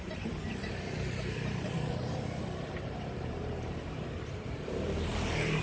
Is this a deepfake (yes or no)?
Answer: yes